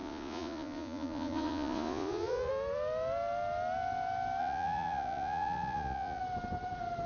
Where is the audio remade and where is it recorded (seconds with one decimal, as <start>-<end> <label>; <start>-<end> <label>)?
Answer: 0.0-2.5 remade; 2.5-4.4 recorded; 4.4-6.2 remade; 6.2-7.1 recorded